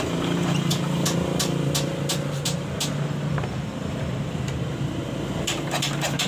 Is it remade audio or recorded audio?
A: recorded